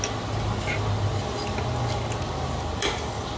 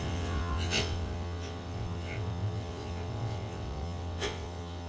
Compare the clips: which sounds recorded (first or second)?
first